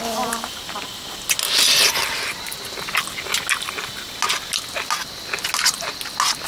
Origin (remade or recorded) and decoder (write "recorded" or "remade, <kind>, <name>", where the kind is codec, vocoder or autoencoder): recorded